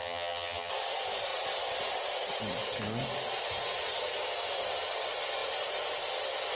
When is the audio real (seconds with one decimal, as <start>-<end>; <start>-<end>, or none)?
0.7-6.5